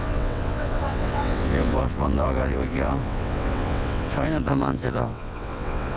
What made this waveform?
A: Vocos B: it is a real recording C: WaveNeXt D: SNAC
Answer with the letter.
C